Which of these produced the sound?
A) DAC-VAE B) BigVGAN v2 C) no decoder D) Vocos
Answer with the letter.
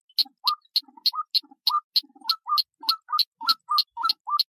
C